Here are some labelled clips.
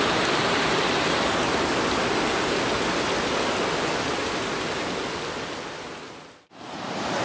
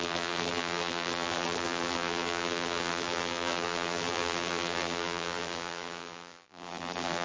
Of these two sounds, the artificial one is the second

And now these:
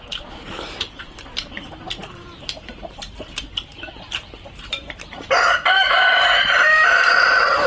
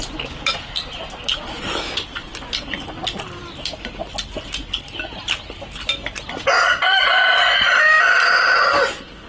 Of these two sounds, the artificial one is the first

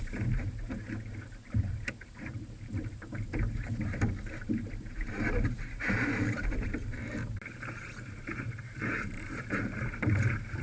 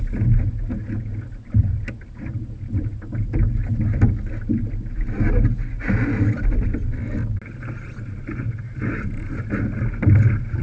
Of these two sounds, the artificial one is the first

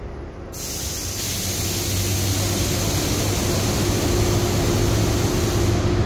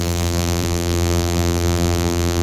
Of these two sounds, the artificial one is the second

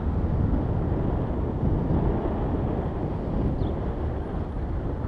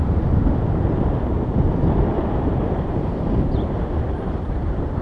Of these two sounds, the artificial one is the second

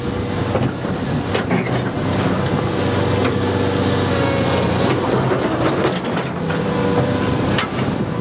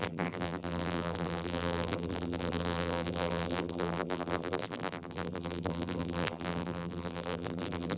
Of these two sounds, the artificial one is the second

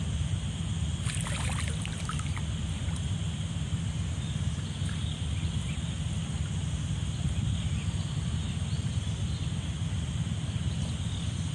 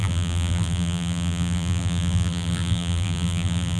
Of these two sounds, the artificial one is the second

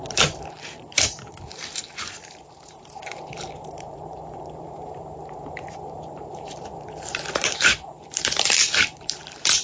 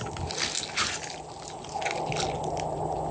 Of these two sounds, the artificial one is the first